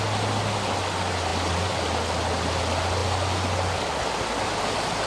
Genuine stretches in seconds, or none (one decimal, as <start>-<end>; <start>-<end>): 0.0-5.1